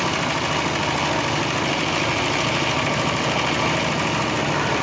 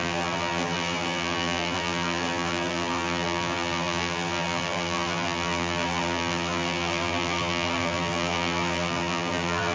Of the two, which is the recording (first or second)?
first